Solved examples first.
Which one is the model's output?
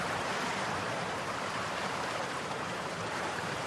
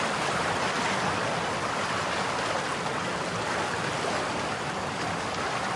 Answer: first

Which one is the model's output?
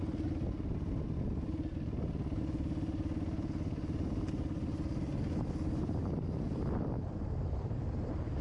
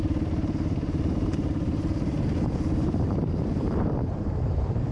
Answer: second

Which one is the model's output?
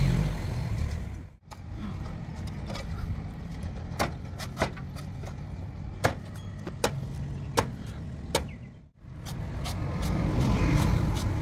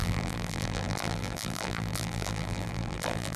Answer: second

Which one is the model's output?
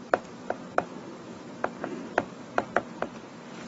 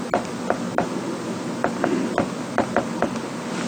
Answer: first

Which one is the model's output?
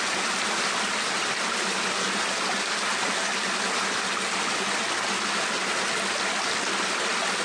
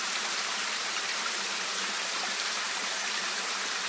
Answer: second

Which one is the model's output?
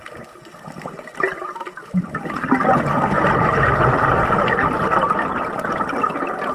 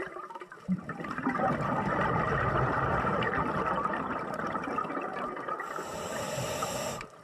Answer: second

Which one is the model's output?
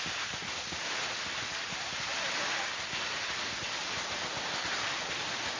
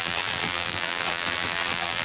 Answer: second